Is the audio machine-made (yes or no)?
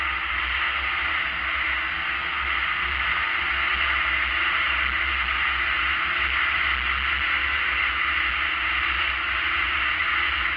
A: no